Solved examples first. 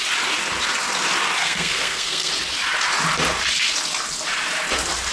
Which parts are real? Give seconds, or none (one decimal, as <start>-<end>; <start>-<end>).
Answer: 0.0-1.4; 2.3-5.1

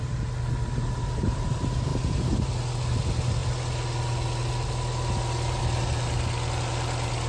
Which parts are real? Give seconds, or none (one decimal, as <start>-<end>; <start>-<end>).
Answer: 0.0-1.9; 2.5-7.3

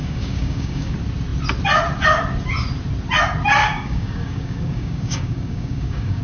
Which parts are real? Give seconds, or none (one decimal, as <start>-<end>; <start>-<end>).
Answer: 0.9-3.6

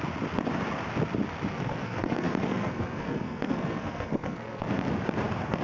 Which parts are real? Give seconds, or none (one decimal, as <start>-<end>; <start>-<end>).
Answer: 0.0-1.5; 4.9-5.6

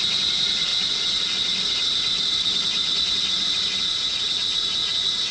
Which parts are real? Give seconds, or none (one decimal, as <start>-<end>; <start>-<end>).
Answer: 0.7-3.9

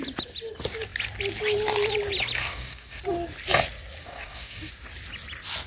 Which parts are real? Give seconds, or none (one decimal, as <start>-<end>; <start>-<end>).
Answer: 0.0-2.4; 3.0-4.0; 4.7-5.7